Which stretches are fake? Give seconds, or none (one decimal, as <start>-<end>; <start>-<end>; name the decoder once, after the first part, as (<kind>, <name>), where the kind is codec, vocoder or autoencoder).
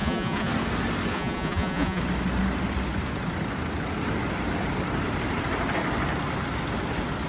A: 0.0-0.5 (vocoder, Vocos); 1.1-2.0